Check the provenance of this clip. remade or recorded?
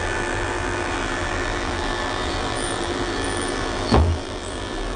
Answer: remade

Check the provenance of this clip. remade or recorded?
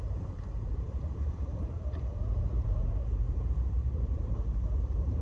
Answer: remade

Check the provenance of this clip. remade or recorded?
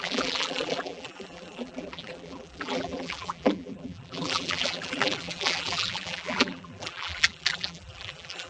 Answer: remade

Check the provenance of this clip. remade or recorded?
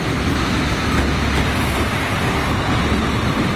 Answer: recorded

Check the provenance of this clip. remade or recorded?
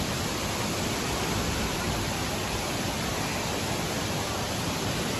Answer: remade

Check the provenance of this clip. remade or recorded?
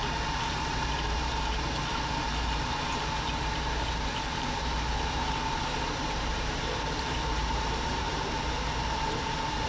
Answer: remade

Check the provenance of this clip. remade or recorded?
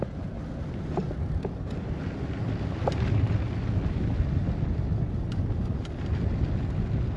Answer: recorded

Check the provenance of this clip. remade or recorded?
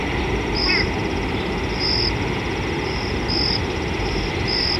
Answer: recorded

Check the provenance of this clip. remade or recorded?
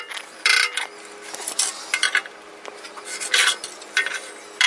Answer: recorded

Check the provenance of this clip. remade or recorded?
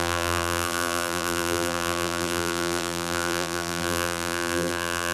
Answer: remade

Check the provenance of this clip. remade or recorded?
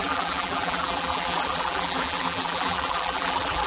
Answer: remade